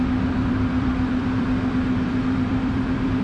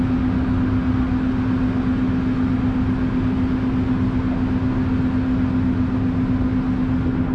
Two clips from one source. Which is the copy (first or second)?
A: first